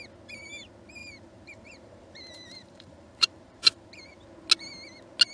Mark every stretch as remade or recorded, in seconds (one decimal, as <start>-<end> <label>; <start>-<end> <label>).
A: 0.0-1.0 recorded; 1.0-4.2 remade; 4.2-5.3 recorded